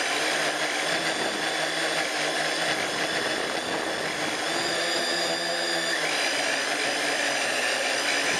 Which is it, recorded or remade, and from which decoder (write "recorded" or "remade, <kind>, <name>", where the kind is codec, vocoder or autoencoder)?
recorded